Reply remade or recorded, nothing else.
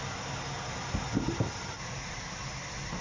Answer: recorded